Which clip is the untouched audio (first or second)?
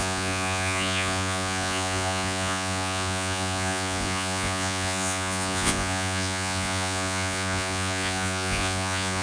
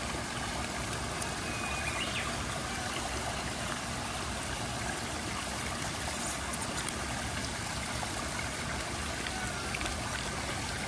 second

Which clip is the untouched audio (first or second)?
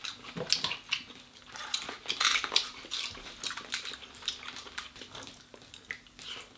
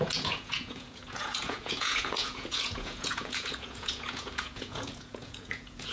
first